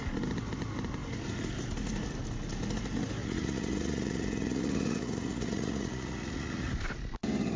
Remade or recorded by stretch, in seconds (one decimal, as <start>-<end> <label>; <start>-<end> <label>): 0.0-3.2 recorded; 3.2-6.7 remade; 6.7-7.6 recorded